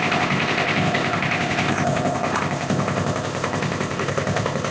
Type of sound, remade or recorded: remade